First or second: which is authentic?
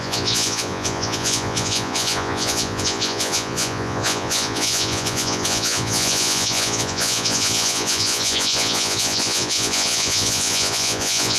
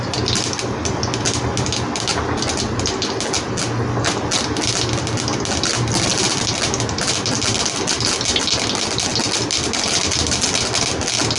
second